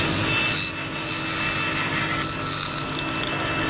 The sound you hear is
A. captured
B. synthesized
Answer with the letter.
A